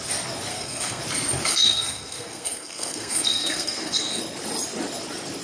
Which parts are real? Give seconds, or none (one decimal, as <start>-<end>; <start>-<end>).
0.0-0.5; 1.0-1.5; 4.2-5.4